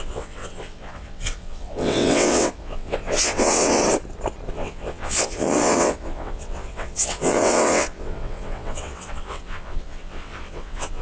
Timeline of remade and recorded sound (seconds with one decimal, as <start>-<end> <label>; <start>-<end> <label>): 0.0-3.8 remade; 3.8-4.5 recorded; 4.5-11.0 remade

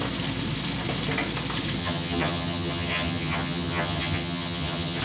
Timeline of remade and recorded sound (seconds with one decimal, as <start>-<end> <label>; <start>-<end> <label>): 0.0-1.8 recorded; 1.8-5.0 remade